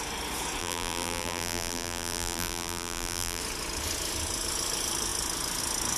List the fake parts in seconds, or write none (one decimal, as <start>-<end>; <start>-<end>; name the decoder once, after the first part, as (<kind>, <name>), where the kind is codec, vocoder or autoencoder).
0.6-3.4 (vocoder, BigVGAN v2)